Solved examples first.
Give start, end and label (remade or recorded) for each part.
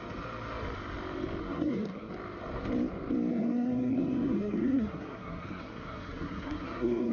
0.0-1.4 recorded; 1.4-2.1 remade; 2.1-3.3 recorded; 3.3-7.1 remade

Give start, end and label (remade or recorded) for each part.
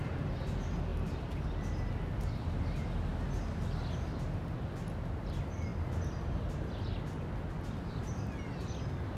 0.0-9.2 recorded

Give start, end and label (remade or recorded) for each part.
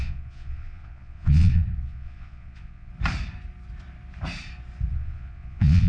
0.0-2.9 remade; 2.9-4.9 recorded; 4.9-5.9 remade